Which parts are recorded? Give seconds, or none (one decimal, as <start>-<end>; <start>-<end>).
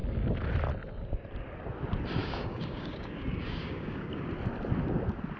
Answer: 0.0-2.2; 4.2-5.4